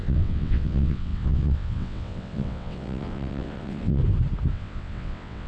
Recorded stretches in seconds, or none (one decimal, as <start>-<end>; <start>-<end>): 4.0-4.5